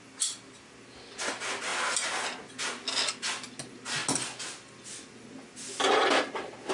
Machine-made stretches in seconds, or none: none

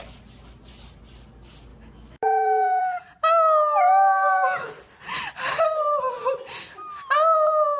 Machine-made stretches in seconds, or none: 1.7-2.8 (autoencoder, DAC-VAE); 3.9-4.7

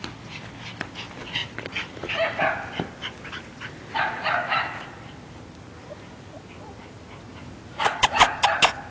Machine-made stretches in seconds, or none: none

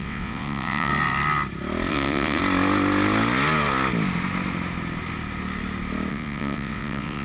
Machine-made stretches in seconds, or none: 0.0-0.9 (vocoder, WaveNeXt); 1.9-2.4; 6.1-7.2